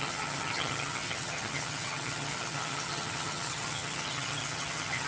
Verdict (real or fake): fake